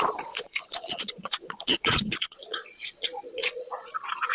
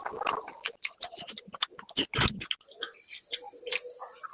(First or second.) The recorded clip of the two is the second